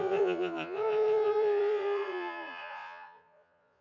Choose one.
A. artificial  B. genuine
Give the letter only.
A